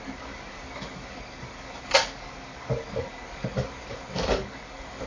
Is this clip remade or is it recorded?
remade